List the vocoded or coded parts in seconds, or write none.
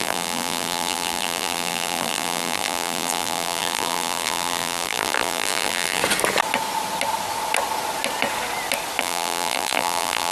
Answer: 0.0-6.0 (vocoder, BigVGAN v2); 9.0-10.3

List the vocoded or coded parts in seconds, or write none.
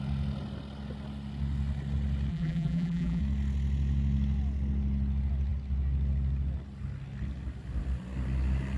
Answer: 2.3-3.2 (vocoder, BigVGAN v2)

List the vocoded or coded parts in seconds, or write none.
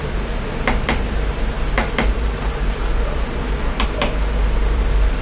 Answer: 1.8-2.6 (vocoder, BigVGAN v2); 4.6-5.2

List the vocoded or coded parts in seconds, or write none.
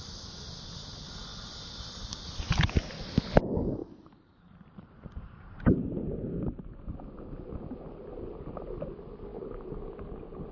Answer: 1.3-2.9 (vocoder, BigVGAN v2); 3.8-6.6